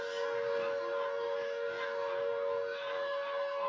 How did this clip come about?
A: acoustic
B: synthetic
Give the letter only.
B